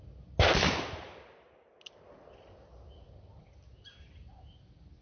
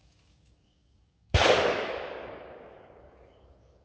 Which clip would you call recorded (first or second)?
first